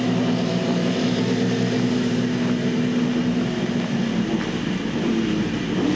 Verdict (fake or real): real